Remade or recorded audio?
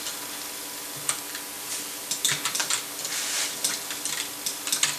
recorded